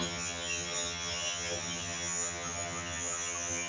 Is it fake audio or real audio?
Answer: fake